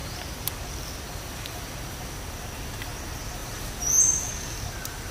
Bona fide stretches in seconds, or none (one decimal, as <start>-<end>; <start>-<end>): 0.0-3.4; 4.3-5.1